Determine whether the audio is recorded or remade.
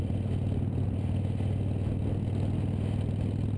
recorded